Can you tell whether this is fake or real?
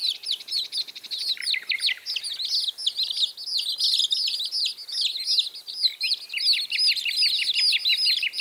real